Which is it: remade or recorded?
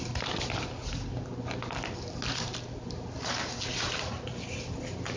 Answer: recorded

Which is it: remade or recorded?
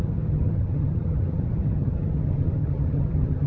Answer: remade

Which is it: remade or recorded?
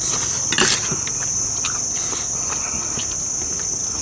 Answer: recorded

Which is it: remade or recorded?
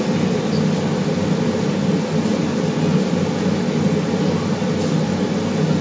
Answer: recorded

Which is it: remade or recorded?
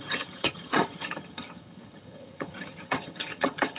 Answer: remade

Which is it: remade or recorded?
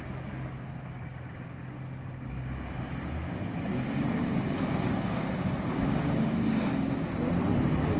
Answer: recorded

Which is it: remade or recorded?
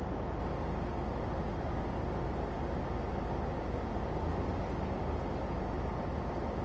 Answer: recorded